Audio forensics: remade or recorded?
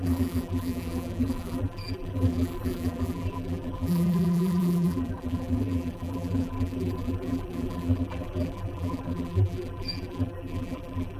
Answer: remade